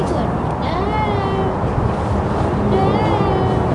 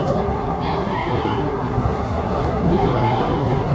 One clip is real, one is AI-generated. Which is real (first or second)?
first